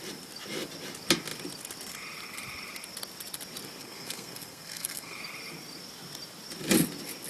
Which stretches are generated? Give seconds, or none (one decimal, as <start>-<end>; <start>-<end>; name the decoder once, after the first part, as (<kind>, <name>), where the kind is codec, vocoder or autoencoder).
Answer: 3.8-5.2 (codec, SNAC)